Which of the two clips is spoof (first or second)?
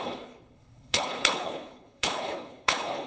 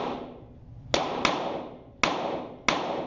first